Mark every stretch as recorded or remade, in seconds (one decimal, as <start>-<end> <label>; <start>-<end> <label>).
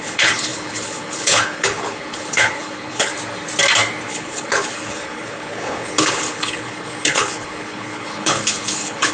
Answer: 0.0-3.1 remade; 3.1-4.1 recorded; 4.1-9.1 remade